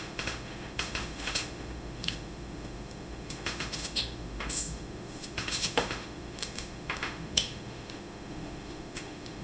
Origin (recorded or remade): remade